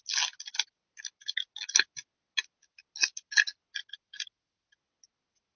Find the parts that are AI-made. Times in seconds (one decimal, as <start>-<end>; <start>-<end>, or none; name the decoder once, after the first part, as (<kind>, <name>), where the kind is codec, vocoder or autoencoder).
none